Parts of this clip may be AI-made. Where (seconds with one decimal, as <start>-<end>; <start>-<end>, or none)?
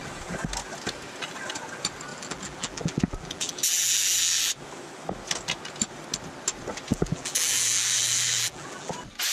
2.1-4.5; 6.9-8.9